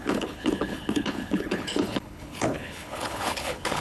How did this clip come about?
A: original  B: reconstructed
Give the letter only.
B